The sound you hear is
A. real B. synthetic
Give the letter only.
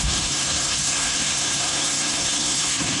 B